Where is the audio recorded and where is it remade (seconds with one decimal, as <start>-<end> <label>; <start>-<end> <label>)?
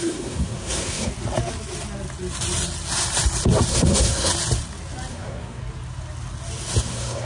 0.0-1.1 remade; 1.1-3.7 recorded; 3.7-4.3 remade; 4.3-5.1 recorded; 5.1-5.6 remade; 5.6-6.8 recorded; 6.8-7.2 remade